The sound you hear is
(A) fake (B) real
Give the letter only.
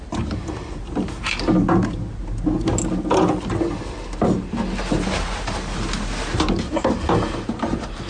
B